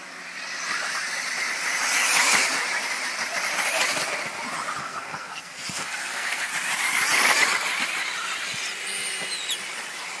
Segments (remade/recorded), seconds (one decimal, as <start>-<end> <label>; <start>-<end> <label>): 0.0-4.8 recorded; 4.8-6.5 remade; 6.5-10.2 recorded